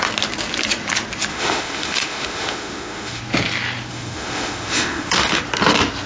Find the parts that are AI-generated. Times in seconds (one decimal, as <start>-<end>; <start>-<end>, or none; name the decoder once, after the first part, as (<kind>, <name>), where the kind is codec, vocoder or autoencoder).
1.3-3.2 (autoencoder, DAC-VAE); 3.9-5.4